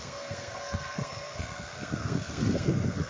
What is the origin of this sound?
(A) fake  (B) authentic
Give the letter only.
A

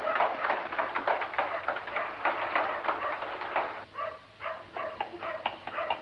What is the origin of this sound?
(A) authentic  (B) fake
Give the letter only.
A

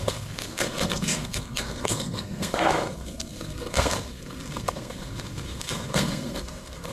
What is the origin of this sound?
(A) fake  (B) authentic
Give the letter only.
A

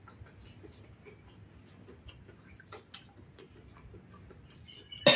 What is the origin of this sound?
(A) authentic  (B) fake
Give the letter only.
A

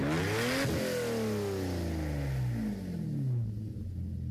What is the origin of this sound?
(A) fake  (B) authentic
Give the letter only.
B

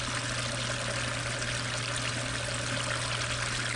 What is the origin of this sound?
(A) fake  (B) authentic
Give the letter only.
B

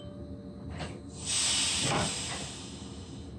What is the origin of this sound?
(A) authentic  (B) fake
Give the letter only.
A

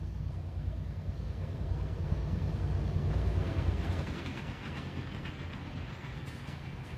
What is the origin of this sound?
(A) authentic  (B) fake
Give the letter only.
B